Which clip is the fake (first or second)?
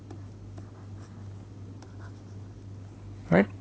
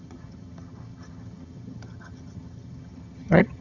second